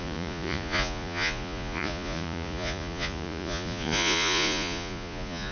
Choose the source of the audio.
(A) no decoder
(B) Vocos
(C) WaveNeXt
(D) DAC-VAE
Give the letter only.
B